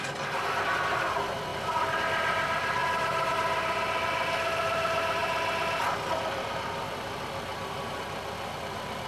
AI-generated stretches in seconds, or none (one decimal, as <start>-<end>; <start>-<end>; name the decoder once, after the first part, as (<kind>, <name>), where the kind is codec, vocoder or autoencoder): 0.0-1.5 (vocoder, BigVGAN v2); 2.0-5.2; 6.1-9.1